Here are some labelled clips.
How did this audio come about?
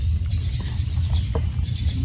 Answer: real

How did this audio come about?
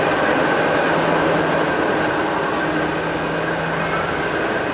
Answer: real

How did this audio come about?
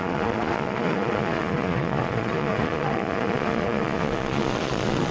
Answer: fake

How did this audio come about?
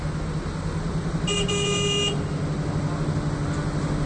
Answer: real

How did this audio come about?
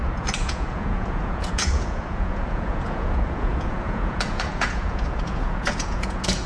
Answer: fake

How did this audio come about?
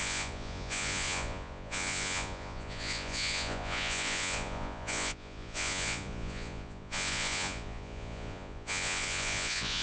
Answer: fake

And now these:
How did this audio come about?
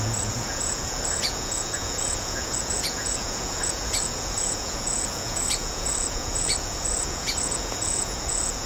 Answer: fake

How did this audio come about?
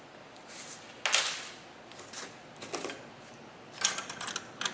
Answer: real